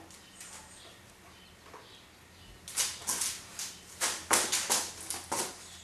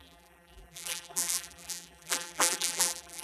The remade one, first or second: second